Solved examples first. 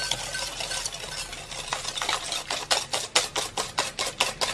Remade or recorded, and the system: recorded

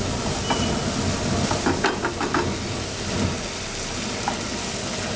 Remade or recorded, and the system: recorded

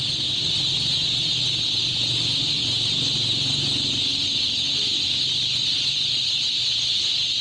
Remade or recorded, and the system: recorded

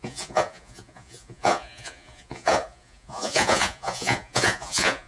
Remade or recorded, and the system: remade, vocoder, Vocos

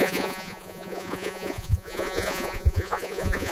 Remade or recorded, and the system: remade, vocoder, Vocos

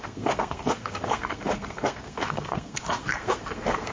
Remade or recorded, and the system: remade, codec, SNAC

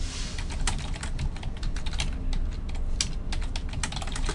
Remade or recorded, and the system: recorded